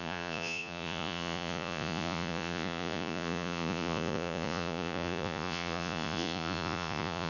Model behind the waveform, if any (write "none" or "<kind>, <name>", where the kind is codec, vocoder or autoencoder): vocoder, Vocos